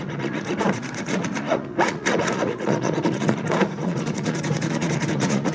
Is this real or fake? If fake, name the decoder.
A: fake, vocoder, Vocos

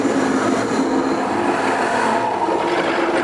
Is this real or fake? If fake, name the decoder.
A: real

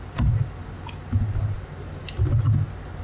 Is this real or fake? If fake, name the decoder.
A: fake, vocoder, BigVGAN v2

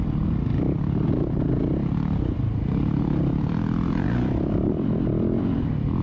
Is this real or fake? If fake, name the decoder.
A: fake, vocoder, BigVGAN v2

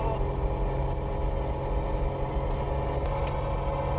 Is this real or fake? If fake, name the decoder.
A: real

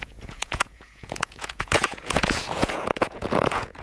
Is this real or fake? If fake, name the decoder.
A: fake, vocoder, Vocos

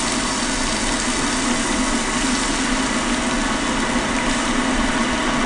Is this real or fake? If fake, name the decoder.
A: real